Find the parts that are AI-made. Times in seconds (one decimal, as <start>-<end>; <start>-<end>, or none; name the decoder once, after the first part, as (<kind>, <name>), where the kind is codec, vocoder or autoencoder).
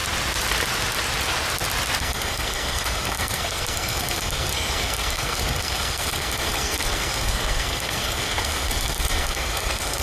2.0-10.0 (codec, SNAC)